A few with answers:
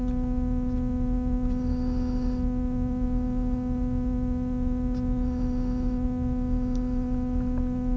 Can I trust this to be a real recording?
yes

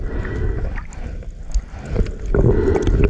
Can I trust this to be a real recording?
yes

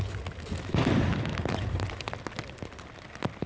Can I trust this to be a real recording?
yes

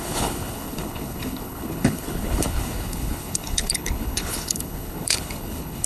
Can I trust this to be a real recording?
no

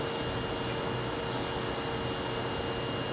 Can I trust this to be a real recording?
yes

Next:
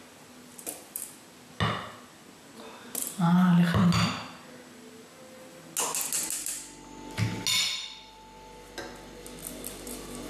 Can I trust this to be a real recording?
yes